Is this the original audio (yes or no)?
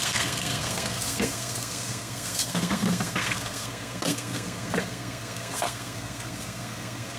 no